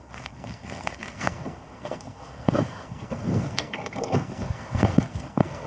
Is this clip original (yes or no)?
no